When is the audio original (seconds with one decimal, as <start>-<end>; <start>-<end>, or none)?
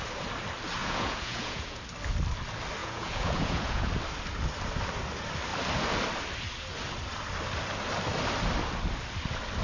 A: 0.0-0.8; 1.8-2.8; 3.9-9.6